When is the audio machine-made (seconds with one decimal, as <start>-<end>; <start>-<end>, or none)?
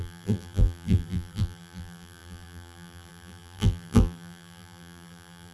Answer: 0.0-5.5